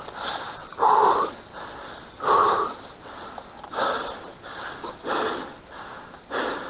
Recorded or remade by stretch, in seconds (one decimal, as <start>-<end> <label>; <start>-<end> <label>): 0.0-0.6 recorded; 0.6-1.5 remade; 1.5-4.3 recorded; 4.3-4.8 remade; 4.8-6.7 recorded